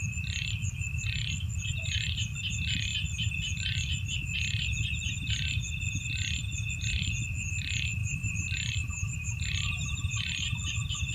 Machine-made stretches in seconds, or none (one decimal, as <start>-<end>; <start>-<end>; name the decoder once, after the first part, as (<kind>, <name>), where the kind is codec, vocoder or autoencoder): 8.0-10.3 (vocoder, BigVGAN v2)